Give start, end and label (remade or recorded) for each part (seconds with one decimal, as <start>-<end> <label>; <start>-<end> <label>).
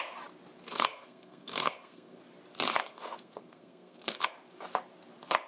0.0-0.7 recorded; 0.7-2.2 remade; 2.2-2.8 recorded; 2.8-4.3 remade; 4.3-5.5 recorded